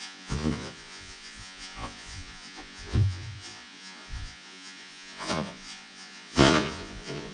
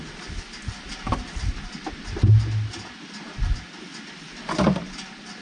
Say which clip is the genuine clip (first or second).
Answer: second